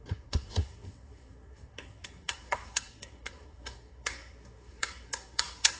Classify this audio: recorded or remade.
remade